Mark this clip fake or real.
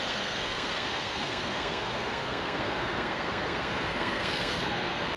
fake